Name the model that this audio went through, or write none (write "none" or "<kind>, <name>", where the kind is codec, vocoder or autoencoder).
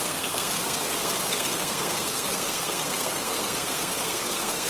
codec, SNAC